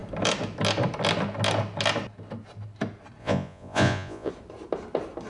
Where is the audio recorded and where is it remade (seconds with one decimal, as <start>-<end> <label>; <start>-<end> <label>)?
0.0-3.2 recorded; 3.2-4.3 remade; 4.3-5.3 recorded